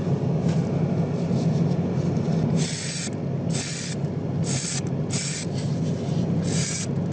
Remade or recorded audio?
recorded